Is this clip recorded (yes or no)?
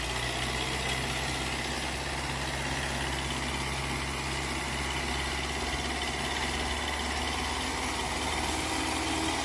yes